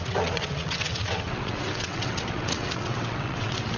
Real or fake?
fake